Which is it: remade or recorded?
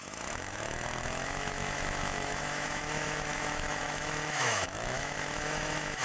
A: remade